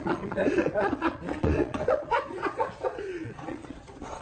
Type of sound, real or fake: fake